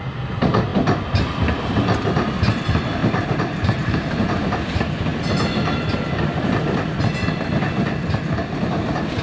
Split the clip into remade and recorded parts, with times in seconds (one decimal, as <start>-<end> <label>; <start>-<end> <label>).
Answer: 0.0-3.0 recorded; 3.0-4.4 remade; 4.4-9.2 recorded